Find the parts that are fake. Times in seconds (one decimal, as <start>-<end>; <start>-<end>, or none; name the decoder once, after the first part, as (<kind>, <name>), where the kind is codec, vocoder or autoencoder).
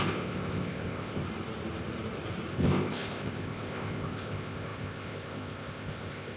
0.0-1.2 (codec, ZipCodec); 2.5-6.4